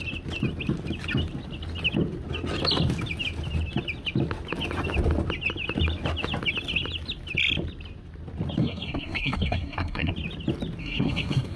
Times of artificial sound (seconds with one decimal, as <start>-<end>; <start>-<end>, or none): 8.6-10.1; 10.8-11.6